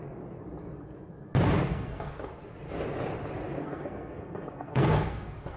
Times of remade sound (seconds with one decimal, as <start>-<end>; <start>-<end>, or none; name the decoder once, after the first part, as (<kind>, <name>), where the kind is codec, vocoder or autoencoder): 1.7-2.3 (codec, SNAC); 3.6-5.6